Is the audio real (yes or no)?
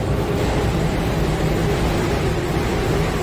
no